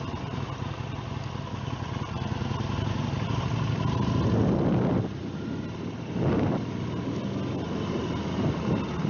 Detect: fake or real real